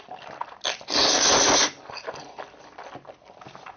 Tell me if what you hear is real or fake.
real